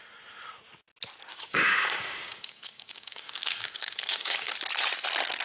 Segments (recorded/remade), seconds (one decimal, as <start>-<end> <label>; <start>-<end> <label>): 0.0-1.3 recorded; 1.3-4.5 remade; 4.5-5.4 recorded